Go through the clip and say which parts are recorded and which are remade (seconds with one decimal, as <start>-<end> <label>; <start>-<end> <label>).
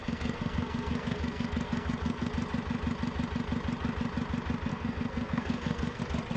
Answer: 0.0-2.3 remade; 2.3-4.7 recorded; 4.7-6.0 remade; 6.0-6.4 recorded